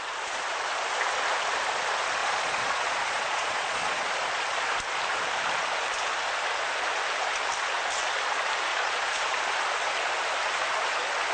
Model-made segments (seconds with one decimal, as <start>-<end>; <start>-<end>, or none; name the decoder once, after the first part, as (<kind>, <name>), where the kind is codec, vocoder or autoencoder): 2.2-4.1 (vocoder, Vocos); 8.7-9.4